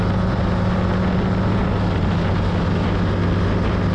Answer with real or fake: real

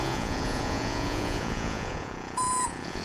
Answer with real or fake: fake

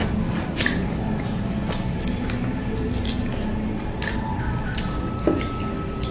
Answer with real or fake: real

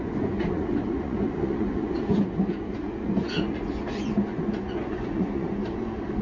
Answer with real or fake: fake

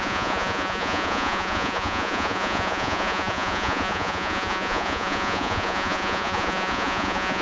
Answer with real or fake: fake